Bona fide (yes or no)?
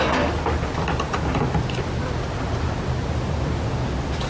yes